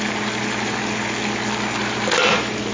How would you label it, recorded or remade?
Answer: recorded